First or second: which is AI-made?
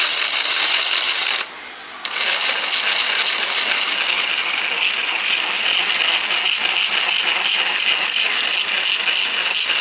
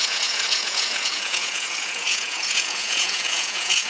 second